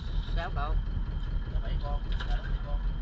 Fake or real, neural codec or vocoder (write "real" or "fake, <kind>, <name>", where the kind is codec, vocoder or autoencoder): real